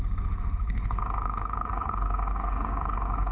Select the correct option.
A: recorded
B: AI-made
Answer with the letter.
B